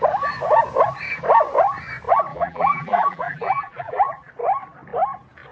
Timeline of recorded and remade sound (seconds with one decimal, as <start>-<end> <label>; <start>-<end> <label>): 0.0-2.3 recorded; 2.3-4.3 remade; 4.3-5.5 recorded